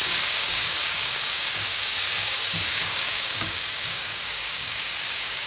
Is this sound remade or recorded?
remade